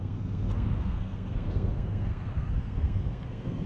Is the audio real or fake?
fake